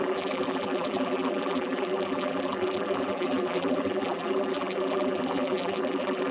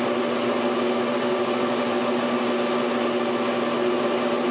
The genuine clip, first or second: second